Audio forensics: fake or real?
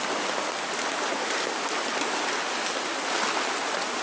real